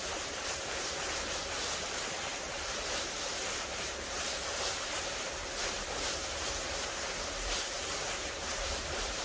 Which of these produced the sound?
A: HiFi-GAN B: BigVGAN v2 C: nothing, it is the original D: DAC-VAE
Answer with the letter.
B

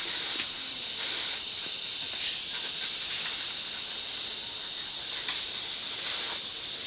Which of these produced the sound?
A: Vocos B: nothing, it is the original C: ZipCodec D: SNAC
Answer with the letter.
B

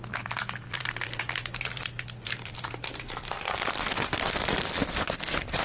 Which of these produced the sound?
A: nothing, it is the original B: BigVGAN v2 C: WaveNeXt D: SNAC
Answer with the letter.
B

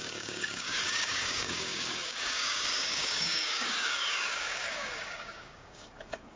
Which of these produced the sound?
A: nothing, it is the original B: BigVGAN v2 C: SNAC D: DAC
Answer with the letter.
D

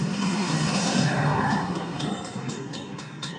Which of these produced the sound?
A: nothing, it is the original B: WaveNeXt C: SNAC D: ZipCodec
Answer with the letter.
C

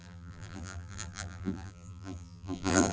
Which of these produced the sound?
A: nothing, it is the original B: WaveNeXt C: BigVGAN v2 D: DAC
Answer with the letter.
C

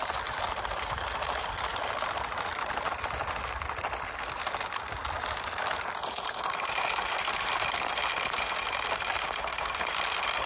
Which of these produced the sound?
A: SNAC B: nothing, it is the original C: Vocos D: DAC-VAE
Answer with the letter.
B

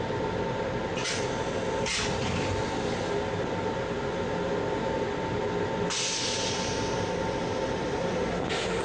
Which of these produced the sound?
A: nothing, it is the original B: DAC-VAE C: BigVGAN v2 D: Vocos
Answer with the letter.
A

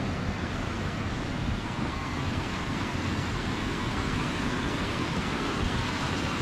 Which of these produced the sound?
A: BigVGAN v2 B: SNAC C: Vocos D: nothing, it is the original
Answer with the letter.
B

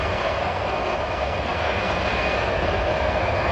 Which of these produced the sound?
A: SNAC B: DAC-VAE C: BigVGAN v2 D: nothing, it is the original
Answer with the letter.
A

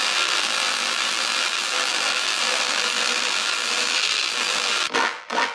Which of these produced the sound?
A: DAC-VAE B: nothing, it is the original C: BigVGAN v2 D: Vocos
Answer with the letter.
C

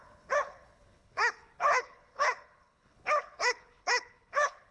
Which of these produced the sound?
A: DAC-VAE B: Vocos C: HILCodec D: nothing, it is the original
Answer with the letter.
C